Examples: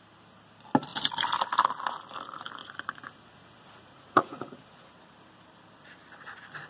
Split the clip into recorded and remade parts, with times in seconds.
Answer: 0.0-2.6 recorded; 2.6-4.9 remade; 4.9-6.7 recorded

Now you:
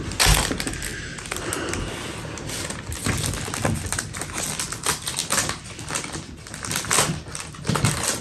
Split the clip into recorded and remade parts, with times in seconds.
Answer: 0.0-8.2 recorded

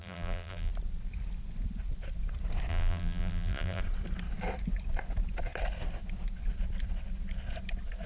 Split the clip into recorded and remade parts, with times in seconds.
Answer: 0.0-0.7 remade; 0.7-2.7 recorded; 2.7-3.8 remade; 3.8-8.1 recorded

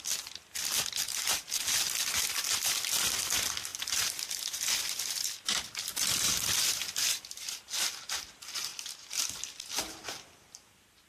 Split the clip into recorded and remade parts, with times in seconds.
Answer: 0.0-11.1 recorded

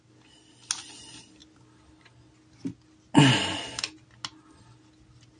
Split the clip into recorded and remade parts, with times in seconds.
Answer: 0.0-5.4 recorded

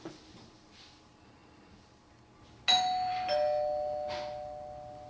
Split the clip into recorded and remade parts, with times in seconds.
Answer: 0.0-5.1 recorded

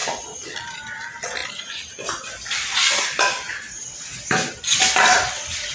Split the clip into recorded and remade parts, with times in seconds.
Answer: 0.0-5.7 recorded

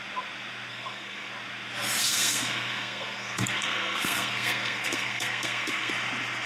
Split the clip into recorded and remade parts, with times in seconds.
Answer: 0.0-0.7 recorded; 0.7-1.3 remade; 1.3-2.0 recorded; 2.0-5.9 remade; 5.9-6.5 recorded